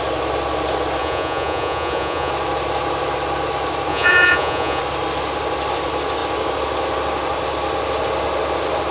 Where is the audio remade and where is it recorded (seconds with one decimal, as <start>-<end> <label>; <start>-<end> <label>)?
0.0-1.0 recorded; 1.0-2.3 remade; 2.3-3.9 recorded; 3.9-4.8 remade; 4.8-8.9 recorded